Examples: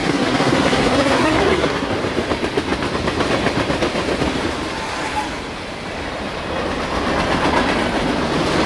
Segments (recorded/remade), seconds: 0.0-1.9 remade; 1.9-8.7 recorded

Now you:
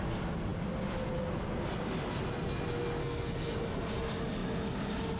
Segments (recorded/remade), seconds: 0.0-3.0 recorded; 3.0-3.6 remade; 3.6-5.2 recorded

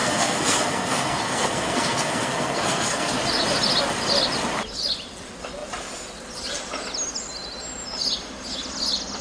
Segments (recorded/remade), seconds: 0.0-3.1 remade; 3.1-9.2 recorded